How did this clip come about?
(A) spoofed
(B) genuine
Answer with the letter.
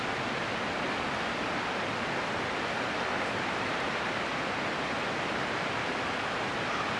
B